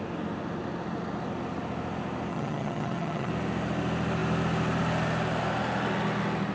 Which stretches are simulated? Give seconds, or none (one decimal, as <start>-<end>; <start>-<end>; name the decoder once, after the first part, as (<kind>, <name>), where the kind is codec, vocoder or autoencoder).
2.3-3.3 (vocoder, HiFi-GAN)